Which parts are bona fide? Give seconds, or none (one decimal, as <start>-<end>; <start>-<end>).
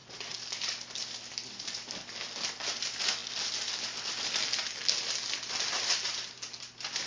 0.0-4.4; 5.9-7.1